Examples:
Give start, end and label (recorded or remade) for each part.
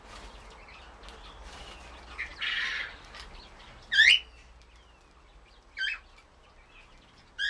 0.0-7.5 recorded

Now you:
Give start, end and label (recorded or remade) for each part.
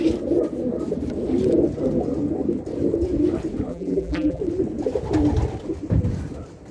0.0-3.7 recorded; 3.7-4.4 remade; 4.4-6.7 recorded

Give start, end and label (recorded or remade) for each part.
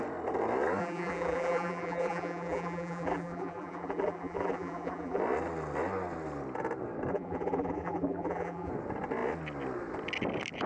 0.0-0.8 recorded; 0.8-5.2 remade; 5.2-7.1 recorded; 7.1-8.7 remade; 8.7-10.7 recorded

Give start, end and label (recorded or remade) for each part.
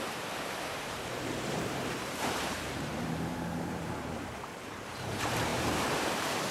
0.0-6.5 remade